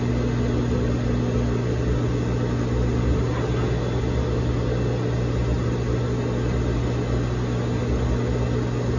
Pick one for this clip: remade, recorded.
recorded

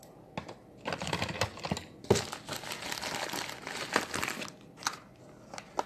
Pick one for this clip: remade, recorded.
recorded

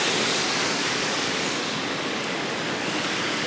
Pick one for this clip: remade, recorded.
remade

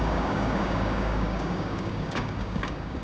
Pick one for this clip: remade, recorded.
remade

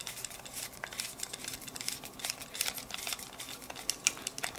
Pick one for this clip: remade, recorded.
recorded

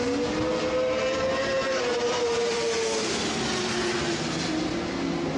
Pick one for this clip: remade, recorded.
recorded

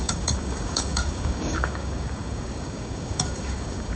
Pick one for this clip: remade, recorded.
remade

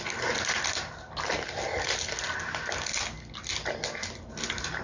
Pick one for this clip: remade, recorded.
recorded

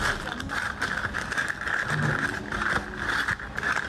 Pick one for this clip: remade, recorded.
recorded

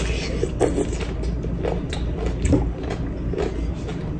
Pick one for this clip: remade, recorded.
recorded